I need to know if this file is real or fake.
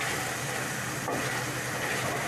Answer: real